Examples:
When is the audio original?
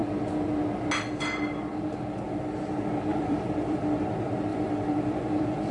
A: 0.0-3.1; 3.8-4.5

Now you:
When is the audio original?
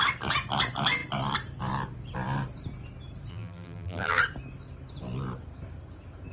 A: 0.0-3.3; 4.2-6.3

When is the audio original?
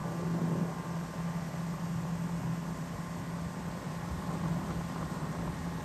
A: 0.0-5.8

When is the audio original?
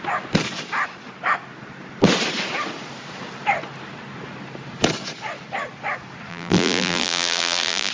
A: 0.0-6.3